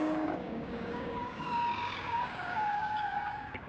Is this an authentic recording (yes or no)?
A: no